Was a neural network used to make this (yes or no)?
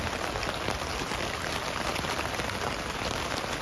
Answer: no